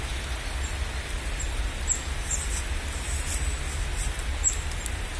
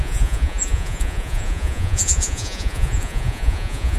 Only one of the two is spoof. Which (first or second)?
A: second